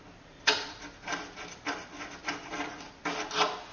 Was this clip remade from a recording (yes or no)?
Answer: no